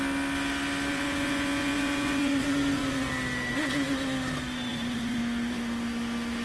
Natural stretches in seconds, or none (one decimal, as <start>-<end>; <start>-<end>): 0.0-0.9; 3.1-4.7; 5.2-6.4